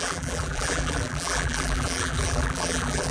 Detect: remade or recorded remade